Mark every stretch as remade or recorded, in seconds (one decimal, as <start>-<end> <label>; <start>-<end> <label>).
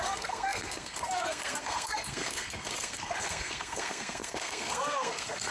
0.0-5.5 remade